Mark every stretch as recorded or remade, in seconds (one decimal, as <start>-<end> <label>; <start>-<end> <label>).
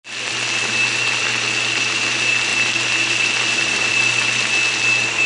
0.0-5.3 recorded